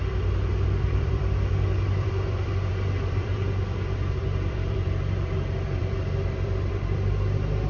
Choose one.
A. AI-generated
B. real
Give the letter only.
A